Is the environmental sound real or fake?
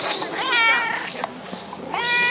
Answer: real